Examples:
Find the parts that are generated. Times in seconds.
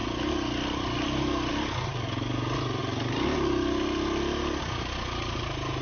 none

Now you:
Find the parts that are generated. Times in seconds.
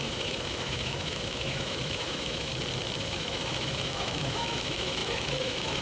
0.0-2.5 (autoencoder, DAC-VAE); 3.0-5.8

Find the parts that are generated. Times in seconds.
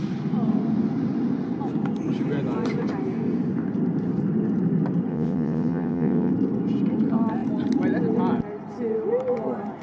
5.1-6.3 (vocoder, WaveNeXt)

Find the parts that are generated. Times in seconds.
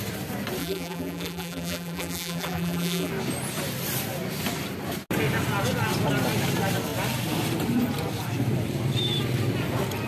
0.6-3.1 (vocoder, BigVGAN v2)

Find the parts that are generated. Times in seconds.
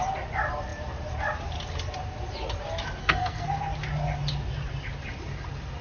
3.0-3.5 (codec, SNAC)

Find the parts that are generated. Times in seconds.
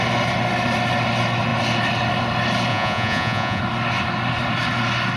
2.7-3.6 (vocoder, Vocos)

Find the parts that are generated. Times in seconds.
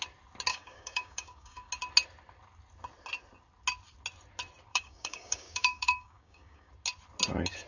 0.5-1.7 (codec, DAC); 4.7-6.7